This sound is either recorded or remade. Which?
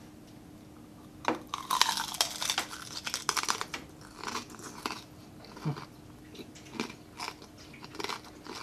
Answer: recorded